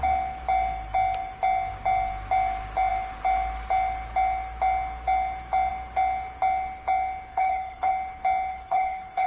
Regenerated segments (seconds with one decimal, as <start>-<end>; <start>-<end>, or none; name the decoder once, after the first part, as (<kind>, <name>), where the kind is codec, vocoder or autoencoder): 7.3-7.9 (codec, HILCodec); 8.5-9.3